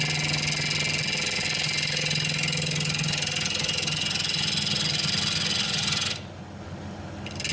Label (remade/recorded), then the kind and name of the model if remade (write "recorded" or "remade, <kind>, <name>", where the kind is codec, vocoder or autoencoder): recorded